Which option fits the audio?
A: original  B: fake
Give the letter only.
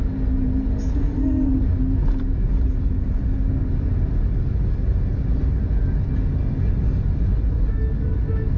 A